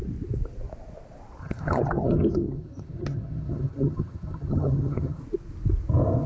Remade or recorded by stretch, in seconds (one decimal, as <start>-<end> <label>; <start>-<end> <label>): 0.0-1.4 recorded; 1.4-5.2 remade; 5.2-6.3 recorded